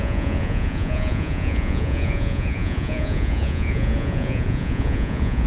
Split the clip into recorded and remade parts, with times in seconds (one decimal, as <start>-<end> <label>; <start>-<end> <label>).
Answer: 0.0-5.5 remade